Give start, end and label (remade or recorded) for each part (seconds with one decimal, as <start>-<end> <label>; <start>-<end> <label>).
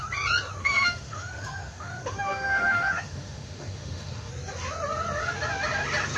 0.0-0.6 recorded; 0.6-4.3 remade; 4.3-6.2 recorded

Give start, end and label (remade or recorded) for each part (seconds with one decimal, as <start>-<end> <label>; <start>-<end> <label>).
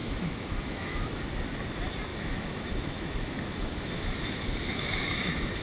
0.0-1.2 remade; 1.2-2.1 recorded; 2.1-5.6 remade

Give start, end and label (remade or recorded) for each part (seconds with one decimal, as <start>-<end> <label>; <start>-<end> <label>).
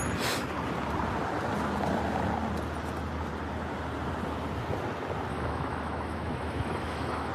0.0-5.3 recorded; 5.3-7.3 remade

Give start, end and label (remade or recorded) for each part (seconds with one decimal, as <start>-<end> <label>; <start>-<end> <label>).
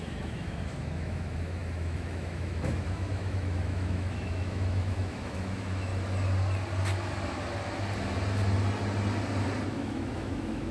0.0-5.9 remade; 5.9-9.7 recorded; 9.7-10.7 remade